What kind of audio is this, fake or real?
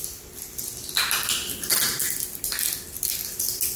real